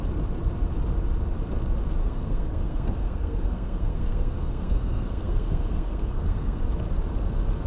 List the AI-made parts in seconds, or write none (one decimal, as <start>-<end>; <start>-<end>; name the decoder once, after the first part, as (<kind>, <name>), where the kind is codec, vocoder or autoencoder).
2.0-6.6 (codec, SNAC)